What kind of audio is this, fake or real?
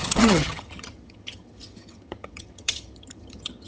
fake